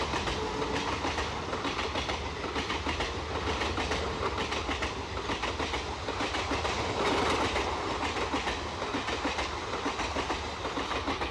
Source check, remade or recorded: recorded